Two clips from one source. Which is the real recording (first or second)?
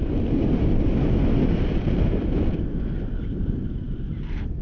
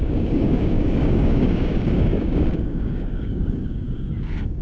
first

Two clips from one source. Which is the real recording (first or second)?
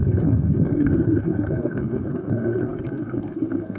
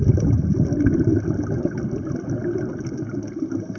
second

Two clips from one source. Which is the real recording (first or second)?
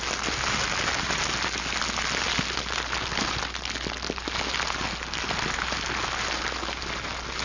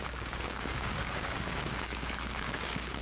first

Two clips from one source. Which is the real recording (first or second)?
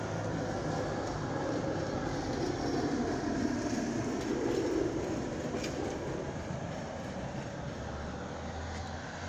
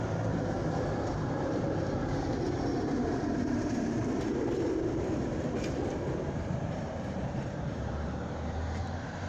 first